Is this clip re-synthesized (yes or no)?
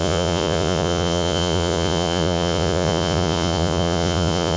yes